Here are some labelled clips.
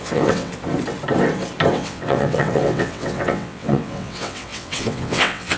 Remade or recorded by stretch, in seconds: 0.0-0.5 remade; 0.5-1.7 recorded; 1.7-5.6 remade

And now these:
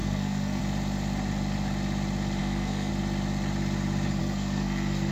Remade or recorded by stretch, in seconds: 0.0-0.6 remade; 0.6-2.4 recorded; 2.4-2.9 remade; 2.9-4.2 recorded; 4.2-5.1 remade